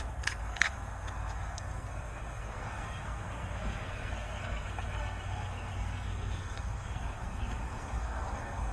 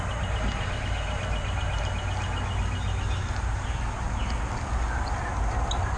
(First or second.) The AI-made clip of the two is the first